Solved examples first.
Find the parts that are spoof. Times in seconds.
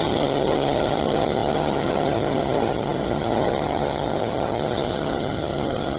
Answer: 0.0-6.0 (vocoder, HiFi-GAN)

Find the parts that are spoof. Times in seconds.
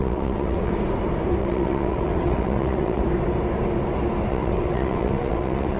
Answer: 0.0-0.7 (vocoder, WaveNeXt); 1.4-3.0; 4.3-5.8